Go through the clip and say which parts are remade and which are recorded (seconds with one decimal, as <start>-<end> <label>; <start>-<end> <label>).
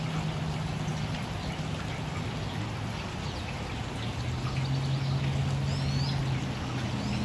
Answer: 0.0-7.2 recorded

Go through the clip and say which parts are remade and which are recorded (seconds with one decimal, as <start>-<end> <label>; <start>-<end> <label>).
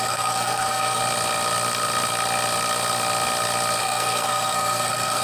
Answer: 0.0-1.0 remade; 1.0-3.8 recorded; 3.8-5.2 remade